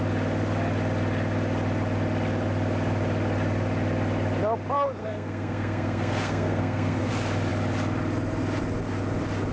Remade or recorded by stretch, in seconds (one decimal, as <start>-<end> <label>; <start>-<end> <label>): 0.0-5.0 recorded; 5.0-7.1 remade; 7.1-9.5 recorded